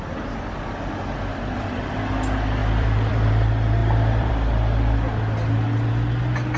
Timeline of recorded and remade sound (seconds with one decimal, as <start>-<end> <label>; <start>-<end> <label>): 0.0-1.3 recorded; 1.3-2.1 remade; 2.1-2.6 recorded; 2.6-3.3 remade; 3.3-3.8 recorded; 3.8-4.3 remade; 4.3-6.6 recorded